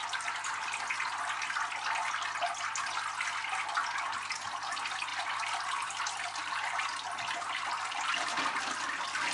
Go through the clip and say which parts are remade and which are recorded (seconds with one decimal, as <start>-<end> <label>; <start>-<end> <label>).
0.0-5.1 recorded; 5.1-6.0 remade; 6.0-9.3 recorded